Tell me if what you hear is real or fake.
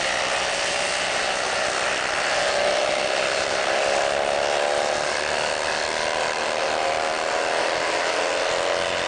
real